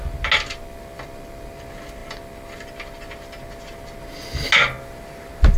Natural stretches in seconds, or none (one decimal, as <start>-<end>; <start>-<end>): 0.0-5.6